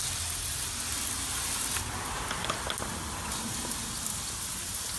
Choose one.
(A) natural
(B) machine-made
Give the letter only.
A